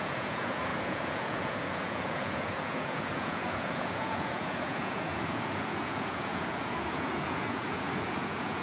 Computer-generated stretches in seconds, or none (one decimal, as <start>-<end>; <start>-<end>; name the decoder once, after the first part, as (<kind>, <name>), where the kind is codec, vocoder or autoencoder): 0.0-8.6 (vocoder, Vocos)